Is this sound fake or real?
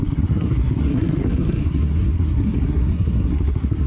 fake